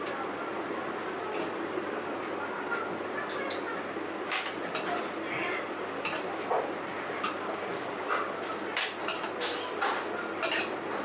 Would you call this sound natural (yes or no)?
yes